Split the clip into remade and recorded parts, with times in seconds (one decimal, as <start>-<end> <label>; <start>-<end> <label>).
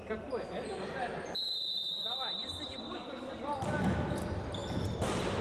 0.0-1.6 recorded; 1.6-3.4 remade; 3.4-4.6 recorded; 4.6-5.4 remade